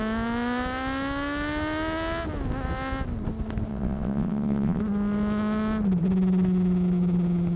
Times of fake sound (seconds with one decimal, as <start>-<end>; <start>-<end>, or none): 3.7-4.8